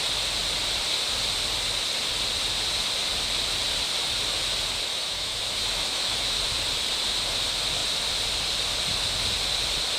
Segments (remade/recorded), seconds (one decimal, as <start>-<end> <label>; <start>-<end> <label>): 0.0-4.9 recorded; 4.9-6.4 remade; 6.4-10.0 recorded